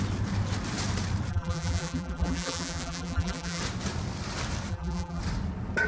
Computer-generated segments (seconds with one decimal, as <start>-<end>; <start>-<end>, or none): 1.3-3.6; 4.7-5.2